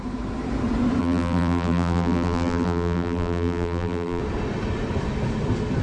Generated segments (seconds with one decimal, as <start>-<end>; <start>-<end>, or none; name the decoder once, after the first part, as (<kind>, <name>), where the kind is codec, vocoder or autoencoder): 1.0-4.2 (vocoder, BigVGAN v2)